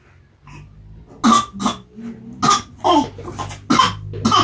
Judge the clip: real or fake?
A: real